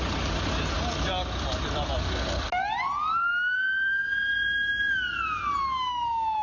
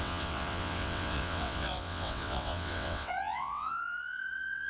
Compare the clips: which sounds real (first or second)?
first